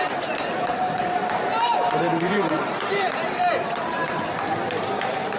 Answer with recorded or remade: remade